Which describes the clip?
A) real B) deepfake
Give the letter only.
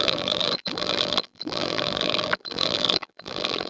B